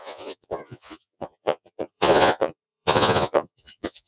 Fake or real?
fake